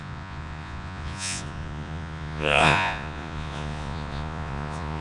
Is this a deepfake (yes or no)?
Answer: yes